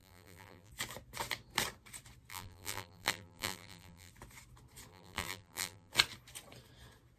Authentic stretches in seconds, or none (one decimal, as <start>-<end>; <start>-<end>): 0.7-2.3; 4.1-4.9; 5.9-7.2